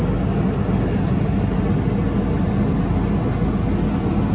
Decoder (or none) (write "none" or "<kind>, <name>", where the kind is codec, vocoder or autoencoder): none